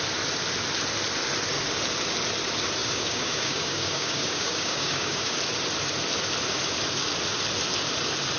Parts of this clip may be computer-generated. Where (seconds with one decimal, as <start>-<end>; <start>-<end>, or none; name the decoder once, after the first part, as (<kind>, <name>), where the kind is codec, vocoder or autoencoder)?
2.8-5.4 (codec, DAC)